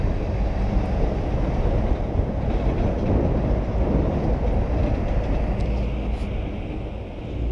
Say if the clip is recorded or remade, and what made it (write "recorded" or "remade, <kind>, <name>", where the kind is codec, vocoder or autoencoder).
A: recorded